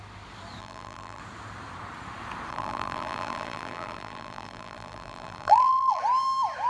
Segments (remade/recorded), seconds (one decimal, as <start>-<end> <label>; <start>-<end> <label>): 0.0-0.6 recorded; 0.6-1.2 remade; 1.2-2.5 recorded; 2.5-6.0 remade; 6.0-6.7 recorded